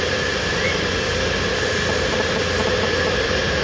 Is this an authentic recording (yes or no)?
yes